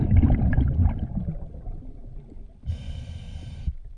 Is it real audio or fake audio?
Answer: real